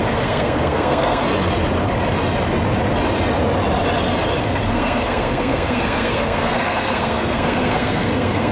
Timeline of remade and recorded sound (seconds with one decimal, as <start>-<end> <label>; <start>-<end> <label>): 0.0-1.2 remade; 1.2-4.4 recorded; 4.4-8.5 remade